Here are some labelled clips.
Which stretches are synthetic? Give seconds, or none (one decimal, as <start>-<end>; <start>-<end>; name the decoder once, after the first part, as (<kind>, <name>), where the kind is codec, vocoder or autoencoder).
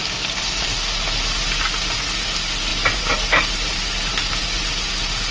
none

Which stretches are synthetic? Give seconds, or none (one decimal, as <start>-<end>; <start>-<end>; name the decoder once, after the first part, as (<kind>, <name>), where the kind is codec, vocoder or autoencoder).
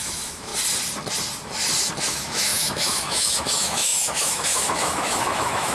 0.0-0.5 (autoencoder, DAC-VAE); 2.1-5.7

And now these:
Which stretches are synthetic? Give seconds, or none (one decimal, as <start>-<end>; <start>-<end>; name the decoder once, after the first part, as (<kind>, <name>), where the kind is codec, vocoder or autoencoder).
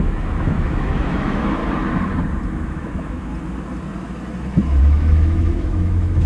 0.0-1.6 (autoencoder, DAC-VAE); 2.5-3.3; 4.8-6.3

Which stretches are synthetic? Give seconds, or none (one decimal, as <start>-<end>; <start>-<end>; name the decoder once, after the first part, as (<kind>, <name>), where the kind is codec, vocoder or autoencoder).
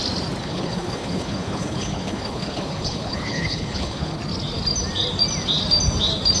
0.4-4.2 (codec, HILCodec)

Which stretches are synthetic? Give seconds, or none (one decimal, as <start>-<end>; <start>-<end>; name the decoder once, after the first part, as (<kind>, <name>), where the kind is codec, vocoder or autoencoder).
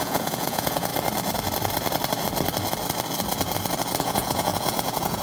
0.0-0.9 (vocoder, Vocos); 4.0-5.2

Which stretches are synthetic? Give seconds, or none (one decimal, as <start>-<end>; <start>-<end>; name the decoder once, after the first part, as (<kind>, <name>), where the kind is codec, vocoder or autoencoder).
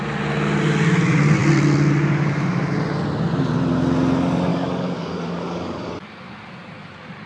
4.5-5.9 (codec, DAC)